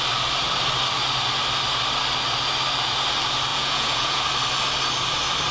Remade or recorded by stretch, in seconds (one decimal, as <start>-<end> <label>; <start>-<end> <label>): 0.0-3.5 recorded; 3.5-4.2 remade; 4.2-5.5 recorded